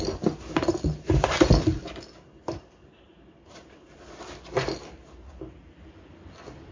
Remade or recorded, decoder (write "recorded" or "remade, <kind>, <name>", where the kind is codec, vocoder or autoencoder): recorded